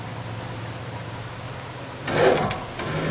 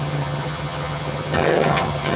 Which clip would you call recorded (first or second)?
first